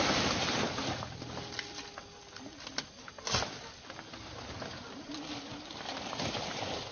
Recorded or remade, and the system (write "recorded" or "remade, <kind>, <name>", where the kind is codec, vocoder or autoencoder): recorded